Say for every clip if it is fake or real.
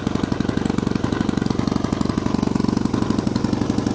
real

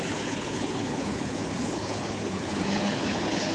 fake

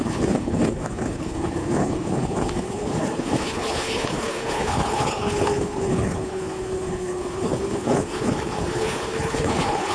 fake